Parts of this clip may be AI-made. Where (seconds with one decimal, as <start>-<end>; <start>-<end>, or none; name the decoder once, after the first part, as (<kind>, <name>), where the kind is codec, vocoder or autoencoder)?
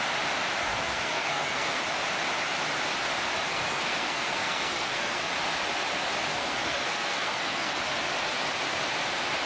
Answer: 0.7-1.8 (codec, SNAC); 3.5-5.3; 6.3-7.8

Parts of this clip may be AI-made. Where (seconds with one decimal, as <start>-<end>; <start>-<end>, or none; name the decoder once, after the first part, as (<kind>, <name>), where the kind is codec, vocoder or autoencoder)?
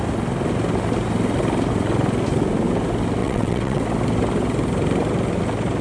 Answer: 3.2-3.8 (vocoder, WaveNeXt)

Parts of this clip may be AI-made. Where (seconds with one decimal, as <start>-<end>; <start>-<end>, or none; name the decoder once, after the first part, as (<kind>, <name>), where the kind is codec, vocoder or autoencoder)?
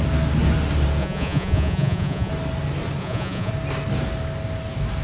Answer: 1.0-2.3 (vocoder, Vocos); 3.0-3.5